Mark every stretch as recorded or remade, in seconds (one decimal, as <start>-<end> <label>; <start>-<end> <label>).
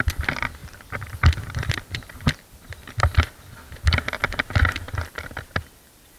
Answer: 0.0-4.2 remade; 4.2-4.8 recorded; 4.8-6.2 remade